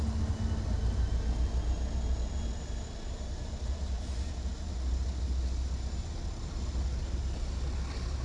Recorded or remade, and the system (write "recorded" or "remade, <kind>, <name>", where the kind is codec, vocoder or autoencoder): recorded